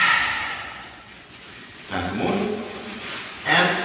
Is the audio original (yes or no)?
no